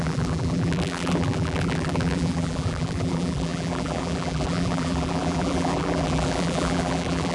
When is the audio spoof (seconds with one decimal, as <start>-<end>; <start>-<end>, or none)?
0.0-7.3